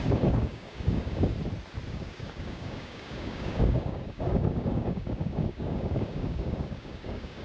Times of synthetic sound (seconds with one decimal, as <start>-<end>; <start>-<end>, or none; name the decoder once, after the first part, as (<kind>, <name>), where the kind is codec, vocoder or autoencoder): 0.0-1.3 (codec, DAC); 1.9-7.4